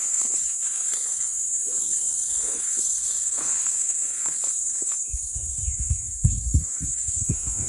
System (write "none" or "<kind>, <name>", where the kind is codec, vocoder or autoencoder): codec, SNAC